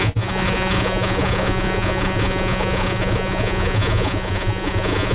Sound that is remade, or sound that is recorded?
remade